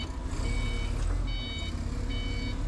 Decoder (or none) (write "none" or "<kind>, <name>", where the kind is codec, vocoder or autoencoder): none